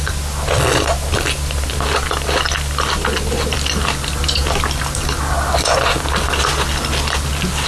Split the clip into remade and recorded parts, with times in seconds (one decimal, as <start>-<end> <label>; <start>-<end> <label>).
0.0-7.7 recorded